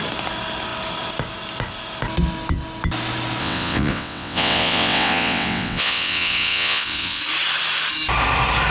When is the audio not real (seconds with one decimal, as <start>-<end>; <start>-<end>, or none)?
3.4-7.2